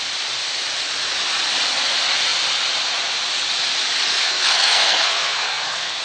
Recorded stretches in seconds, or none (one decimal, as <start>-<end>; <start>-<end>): 0.0-4.2